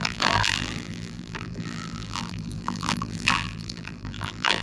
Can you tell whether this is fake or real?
fake